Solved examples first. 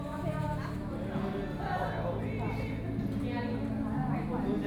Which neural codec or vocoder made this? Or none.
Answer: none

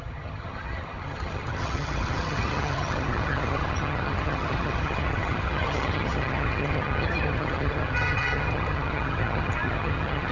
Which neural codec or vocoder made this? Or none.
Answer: vocoder, HiFi-GAN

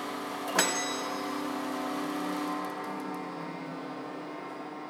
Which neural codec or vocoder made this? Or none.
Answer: none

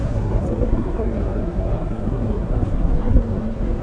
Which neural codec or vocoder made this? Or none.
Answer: codec, SNAC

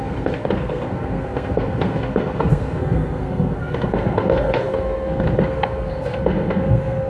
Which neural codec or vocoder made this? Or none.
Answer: codec, SNAC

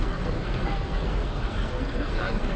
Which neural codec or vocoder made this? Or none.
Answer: codec, SNAC